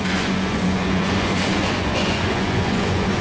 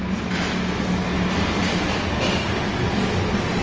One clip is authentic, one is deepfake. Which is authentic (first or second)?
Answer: second